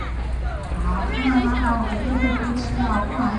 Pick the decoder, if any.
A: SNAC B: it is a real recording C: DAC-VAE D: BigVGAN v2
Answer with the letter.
B